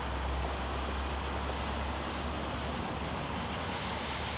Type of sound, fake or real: real